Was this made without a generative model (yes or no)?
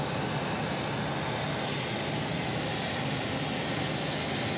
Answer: yes